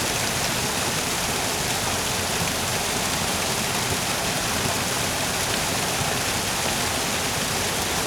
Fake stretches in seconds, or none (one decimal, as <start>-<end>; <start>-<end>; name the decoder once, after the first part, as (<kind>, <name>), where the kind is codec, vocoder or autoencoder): none